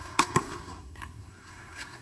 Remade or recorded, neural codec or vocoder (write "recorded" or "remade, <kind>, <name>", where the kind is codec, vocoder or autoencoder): remade, codec, SNAC